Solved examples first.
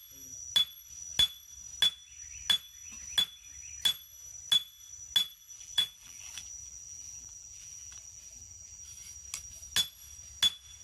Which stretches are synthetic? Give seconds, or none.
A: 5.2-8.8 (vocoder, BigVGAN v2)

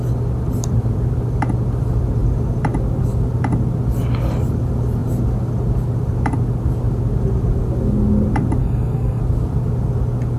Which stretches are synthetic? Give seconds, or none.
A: 8.6-9.2 (codec, SNAC)